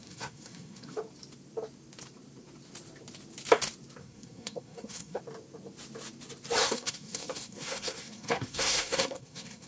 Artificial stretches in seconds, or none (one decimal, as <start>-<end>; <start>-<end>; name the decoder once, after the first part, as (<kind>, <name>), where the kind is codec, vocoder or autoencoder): 0.0-1.0 (codec, SNAC); 4.0-5.2; 6.6-9.7